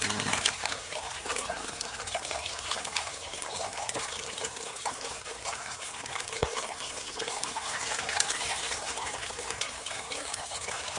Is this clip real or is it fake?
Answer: fake